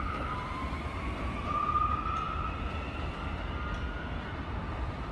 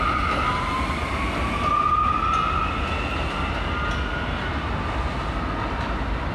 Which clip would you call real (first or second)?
second